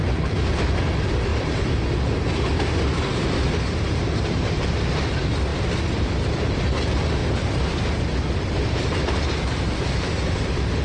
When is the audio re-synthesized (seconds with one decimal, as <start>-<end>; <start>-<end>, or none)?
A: none